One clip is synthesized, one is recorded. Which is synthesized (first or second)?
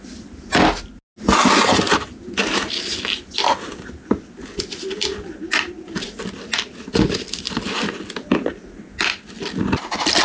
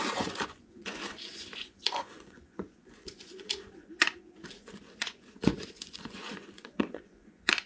second